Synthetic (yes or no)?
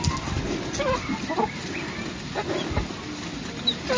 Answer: no